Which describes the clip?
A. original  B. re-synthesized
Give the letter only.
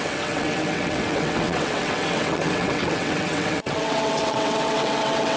B